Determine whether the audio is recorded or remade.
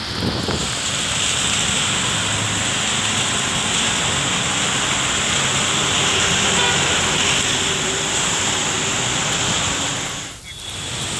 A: recorded